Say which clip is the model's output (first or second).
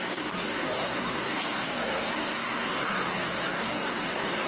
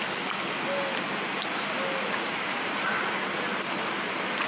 first